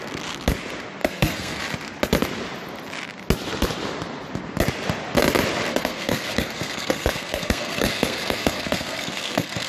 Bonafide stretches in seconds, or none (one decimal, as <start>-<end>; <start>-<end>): 0.0-1.0; 1.6-5.7